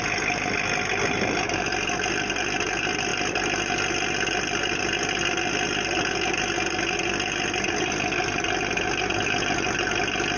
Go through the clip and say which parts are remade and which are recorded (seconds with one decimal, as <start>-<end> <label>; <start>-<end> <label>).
0.0-10.4 recorded